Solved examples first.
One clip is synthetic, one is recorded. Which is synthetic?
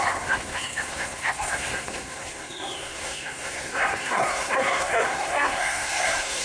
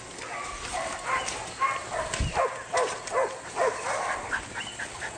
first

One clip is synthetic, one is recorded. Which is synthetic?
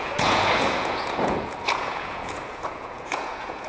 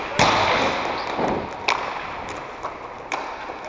first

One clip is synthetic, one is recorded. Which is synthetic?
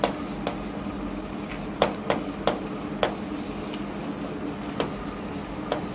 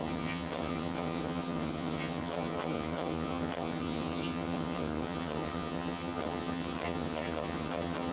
second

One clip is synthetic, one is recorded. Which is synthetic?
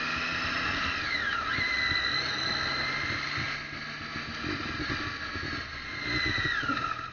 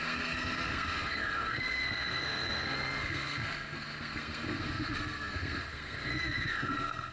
second